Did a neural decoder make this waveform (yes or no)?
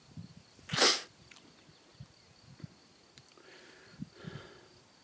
no